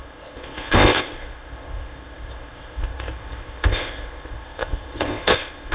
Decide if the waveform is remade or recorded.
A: remade